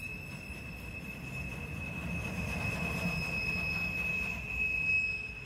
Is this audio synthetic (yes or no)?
no